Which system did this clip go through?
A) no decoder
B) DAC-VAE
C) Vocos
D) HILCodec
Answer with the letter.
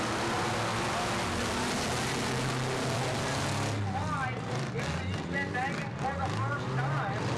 A